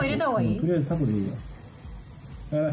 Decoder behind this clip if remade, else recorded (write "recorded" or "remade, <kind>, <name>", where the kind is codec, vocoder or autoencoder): recorded